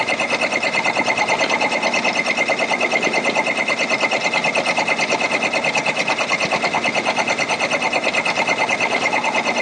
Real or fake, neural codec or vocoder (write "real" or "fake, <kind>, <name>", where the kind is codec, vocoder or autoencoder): real